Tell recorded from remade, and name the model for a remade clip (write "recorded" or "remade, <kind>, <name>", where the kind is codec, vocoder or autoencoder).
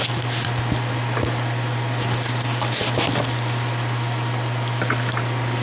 recorded